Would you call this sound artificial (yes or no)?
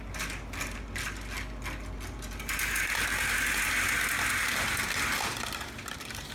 no